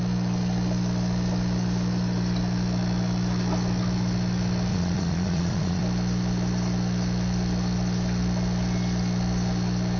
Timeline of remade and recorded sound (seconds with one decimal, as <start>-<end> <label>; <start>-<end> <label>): 0.0-4.7 recorded; 4.7-5.8 remade; 5.8-10.0 recorded